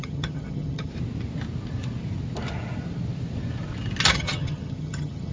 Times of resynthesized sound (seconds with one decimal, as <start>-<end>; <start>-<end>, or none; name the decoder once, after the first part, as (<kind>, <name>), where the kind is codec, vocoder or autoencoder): 0.0-0.9 (vocoder, HiFi-GAN); 4.1-5.3